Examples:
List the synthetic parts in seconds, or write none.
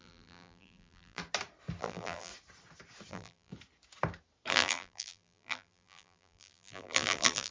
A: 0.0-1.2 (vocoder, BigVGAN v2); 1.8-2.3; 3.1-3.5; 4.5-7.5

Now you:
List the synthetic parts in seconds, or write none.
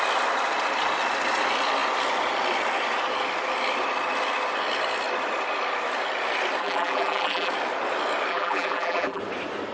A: 6.6-7.5 (vocoder, BigVGAN v2); 8.3-9.2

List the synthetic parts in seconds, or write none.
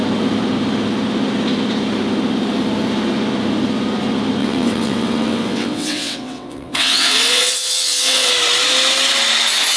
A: 4.4-8.3 (vocoder, WaveNeXt)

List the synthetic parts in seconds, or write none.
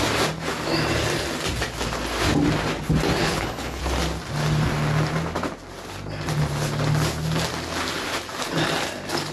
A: 3.2-3.8 (codec, HILCodec)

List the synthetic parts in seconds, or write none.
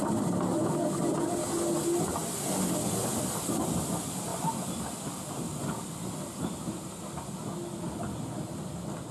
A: none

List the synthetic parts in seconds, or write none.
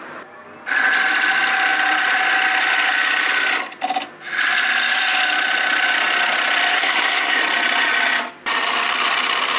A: 6.7-7.4 (codec, SNAC)